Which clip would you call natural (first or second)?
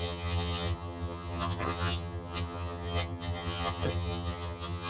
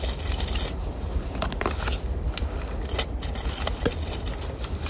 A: second